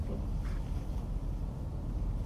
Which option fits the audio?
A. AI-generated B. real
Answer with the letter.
B